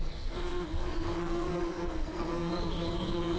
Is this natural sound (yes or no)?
no